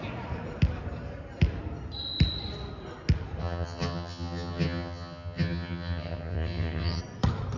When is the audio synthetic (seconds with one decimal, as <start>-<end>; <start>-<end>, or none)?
3.4-7.0